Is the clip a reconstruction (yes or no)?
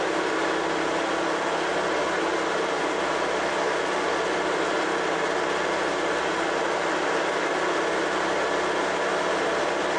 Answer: no